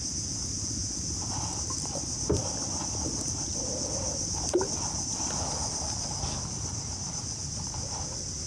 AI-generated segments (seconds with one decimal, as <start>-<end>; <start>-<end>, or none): 1.5-2.4; 3.5-8.0